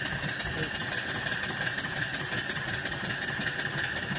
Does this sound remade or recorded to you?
recorded